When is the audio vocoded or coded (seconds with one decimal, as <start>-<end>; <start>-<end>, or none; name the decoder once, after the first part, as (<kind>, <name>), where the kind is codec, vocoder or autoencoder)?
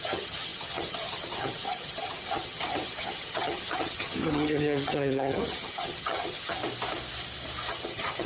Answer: 0.0-6.6 (vocoder, HiFi-GAN); 7.7-8.3